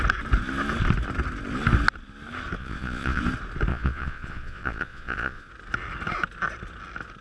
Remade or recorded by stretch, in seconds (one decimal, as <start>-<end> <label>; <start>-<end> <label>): 0.0-2.6 recorded; 2.6-3.2 remade; 3.2-3.7 recorded; 3.7-5.5 remade; 5.5-7.2 recorded